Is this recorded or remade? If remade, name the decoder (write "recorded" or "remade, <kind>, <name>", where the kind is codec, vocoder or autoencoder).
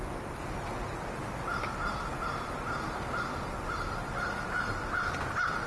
recorded